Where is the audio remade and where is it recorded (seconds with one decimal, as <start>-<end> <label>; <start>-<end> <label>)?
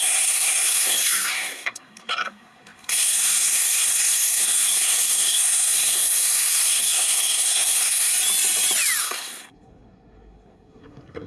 0.0-8.1 remade; 8.1-9.0 recorded; 9.0-11.3 remade